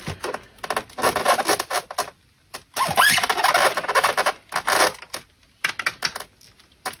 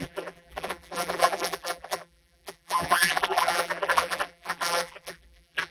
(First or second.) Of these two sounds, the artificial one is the second